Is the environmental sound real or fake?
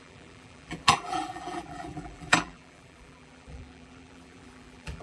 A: fake